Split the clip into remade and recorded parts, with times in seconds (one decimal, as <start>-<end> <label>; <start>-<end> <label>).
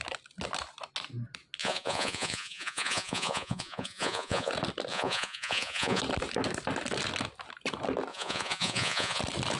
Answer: 0.0-1.6 recorded; 1.6-4.5 remade; 4.5-4.9 recorded; 4.9-6.0 remade; 6.0-8.1 recorded; 8.1-9.2 remade; 9.2-9.6 recorded